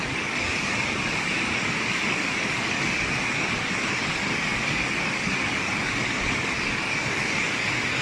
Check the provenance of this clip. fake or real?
fake